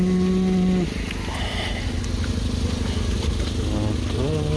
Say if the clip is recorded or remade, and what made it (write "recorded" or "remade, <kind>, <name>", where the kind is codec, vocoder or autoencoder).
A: recorded